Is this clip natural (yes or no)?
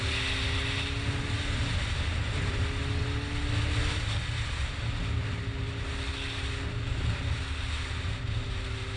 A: yes